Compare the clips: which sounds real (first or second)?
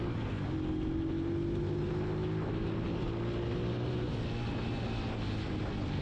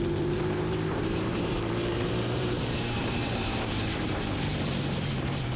first